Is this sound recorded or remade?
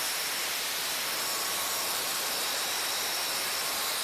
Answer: remade